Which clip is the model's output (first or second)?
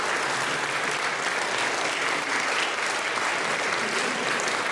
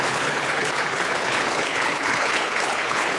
second